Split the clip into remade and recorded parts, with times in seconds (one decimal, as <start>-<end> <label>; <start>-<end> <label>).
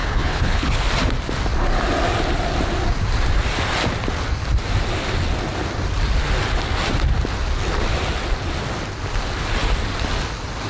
0.0-0.8 remade; 0.8-10.7 recorded